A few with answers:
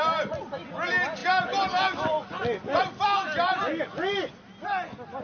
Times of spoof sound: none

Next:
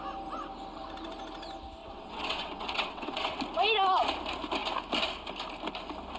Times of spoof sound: 1.8-3.4 (vocoder, WaveNeXt)

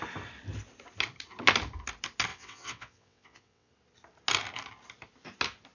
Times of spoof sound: 2.3-3.7 (vocoder, WaveNeXt)

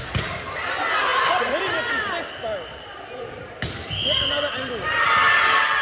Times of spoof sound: none

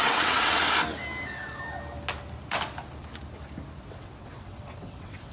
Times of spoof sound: 0.0-0.6 (vocoder, WaveNeXt); 3.8-5.3

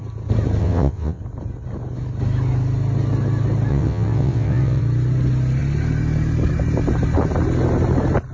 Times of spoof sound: 0.6-1.2 (vocoder, WaveNeXt); 3.7-4.8